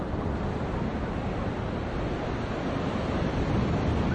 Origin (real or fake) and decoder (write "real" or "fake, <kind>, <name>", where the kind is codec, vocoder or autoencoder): real